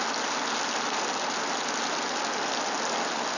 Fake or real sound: real